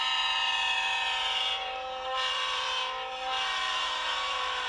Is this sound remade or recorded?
remade